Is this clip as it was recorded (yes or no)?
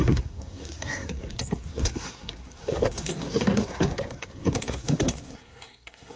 no